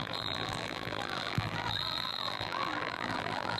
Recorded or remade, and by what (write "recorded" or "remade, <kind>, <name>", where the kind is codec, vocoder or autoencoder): remade, vocoder, BigVGAN v2